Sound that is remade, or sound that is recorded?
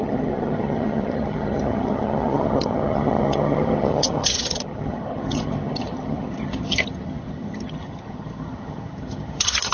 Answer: remade